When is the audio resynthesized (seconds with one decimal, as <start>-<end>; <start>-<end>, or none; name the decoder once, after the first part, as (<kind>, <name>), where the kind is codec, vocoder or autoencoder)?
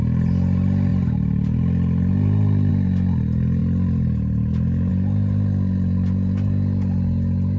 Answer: none